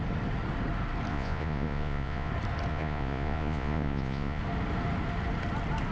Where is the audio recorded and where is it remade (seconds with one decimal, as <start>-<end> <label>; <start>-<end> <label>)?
0.0-1.1 recorded; 1.1-2.3 remade; 2.3-2.7 recorded; 2.7-4.4 remade; 4.4-5.9 recorded